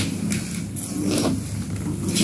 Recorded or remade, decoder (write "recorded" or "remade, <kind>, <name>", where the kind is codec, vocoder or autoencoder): recorded